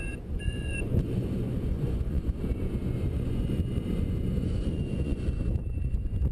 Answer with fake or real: fake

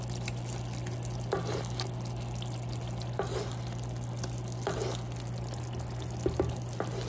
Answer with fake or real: real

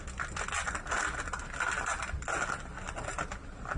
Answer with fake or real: real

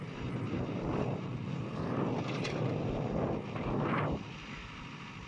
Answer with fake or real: real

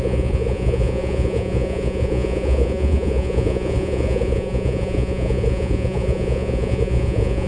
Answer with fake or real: fake